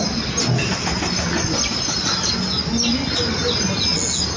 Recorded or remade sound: recorded